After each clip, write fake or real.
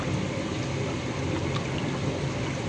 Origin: real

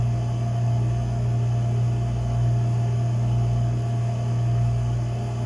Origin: real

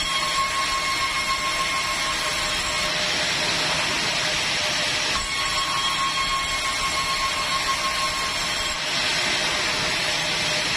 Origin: real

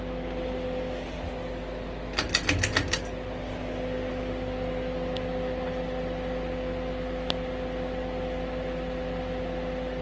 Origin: real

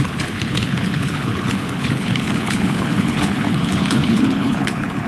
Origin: fake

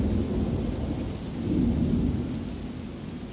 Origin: real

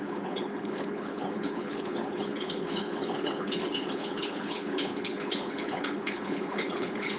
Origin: fake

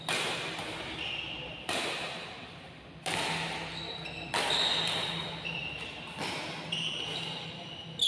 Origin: real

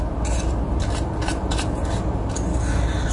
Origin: real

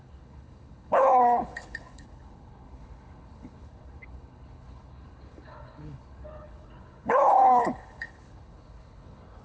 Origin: fake